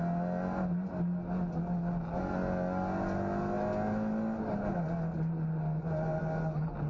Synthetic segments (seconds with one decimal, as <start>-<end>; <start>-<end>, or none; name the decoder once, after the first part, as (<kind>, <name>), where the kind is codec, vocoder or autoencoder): none